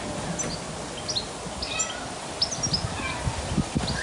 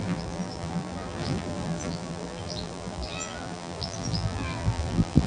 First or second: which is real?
first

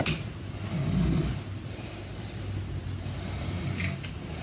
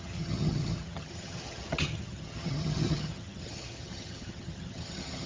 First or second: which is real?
first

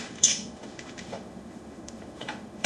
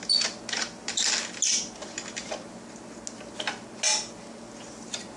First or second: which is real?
second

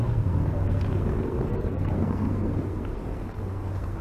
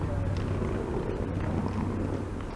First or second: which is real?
second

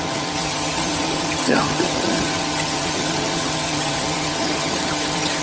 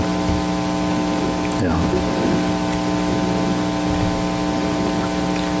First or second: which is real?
second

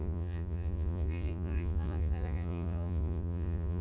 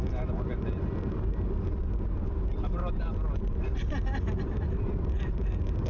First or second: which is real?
second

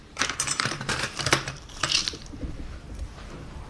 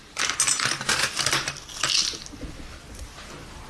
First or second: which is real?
second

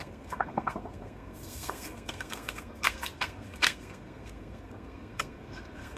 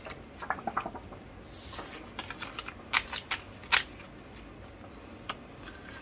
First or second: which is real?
second